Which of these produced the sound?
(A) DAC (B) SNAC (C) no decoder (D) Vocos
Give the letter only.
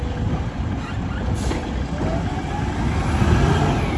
C